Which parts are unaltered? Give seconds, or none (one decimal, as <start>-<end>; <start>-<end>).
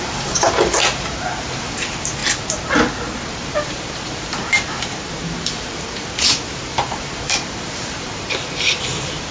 2.2-3.3